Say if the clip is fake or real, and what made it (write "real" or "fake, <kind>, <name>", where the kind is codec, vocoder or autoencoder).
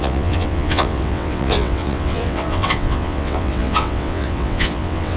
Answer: fake, vocoder, WaveNeXt